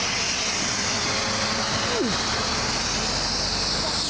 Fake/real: real